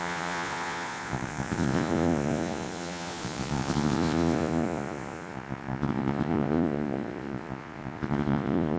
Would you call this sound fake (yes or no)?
yes